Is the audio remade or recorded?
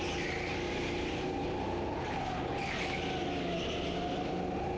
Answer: recorded